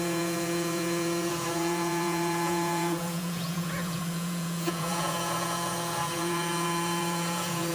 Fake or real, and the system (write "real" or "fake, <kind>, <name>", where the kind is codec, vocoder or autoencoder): fake, vocoder, Vocos